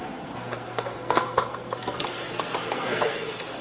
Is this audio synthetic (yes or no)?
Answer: yes